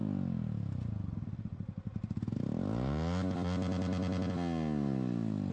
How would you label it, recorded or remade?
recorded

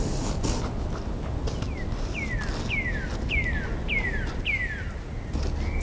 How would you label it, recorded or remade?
recorded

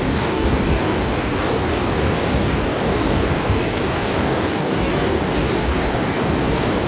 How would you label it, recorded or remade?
remade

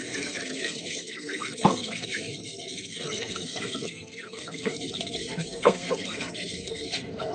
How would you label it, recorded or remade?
remade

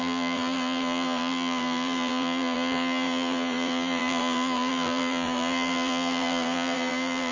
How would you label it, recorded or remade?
remade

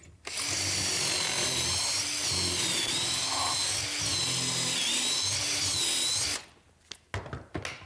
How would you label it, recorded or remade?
recorded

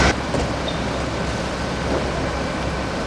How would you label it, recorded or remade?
recorded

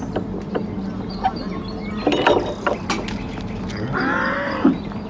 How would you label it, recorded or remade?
recorded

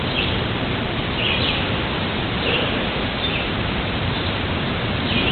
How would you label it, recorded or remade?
remade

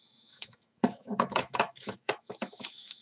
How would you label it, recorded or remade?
remade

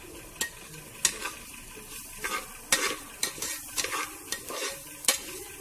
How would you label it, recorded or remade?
recorded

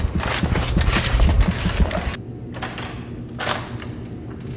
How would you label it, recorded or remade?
recorded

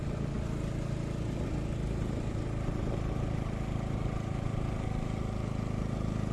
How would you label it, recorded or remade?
recorded